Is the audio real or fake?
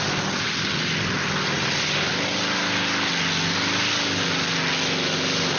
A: real